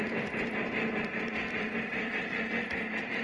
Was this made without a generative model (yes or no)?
no